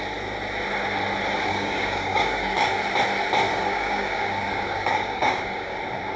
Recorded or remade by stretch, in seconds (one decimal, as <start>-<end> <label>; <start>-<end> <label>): 0.0-1.5 recorded; 1.5-2.7 remade; 2.7-3.5 recorded; 3.5-5.8 remade; 5.8-6.2 recorded